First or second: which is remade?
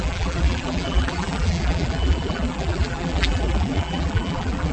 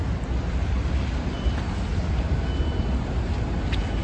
first